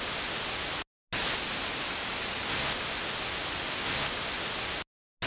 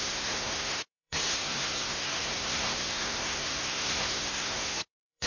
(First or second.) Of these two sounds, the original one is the first